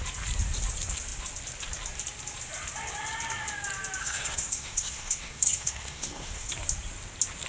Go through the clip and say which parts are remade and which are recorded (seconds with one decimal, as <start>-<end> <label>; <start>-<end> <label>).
0.0-4.0 recorded; 4.0-6.5 remade; 6.5-7.5 recorded